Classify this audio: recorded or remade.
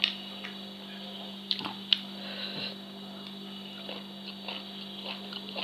recorded